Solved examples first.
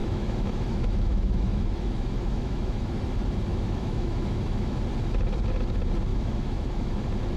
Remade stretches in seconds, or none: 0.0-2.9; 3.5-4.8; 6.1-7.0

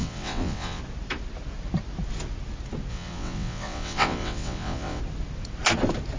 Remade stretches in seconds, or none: 0.0-0.8; 2.9-5.0

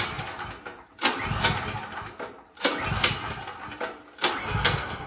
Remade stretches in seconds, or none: 4.4-5.1

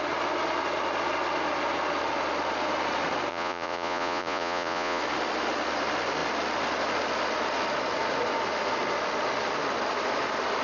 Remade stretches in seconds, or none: 3.3-5.0

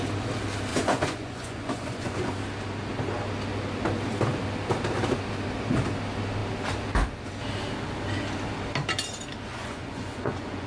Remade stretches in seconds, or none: 0.7-2.3; 9.5-10.7

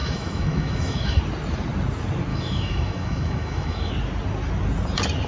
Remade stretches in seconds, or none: 0.0-1.2; 2.3-3.9

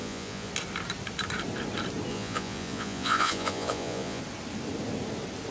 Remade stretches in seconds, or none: 0.0-0.5; 2.1-4.2

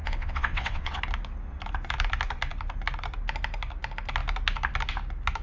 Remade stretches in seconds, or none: 0.0-1.0